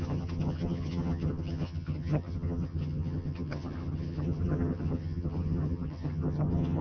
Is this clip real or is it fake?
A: fake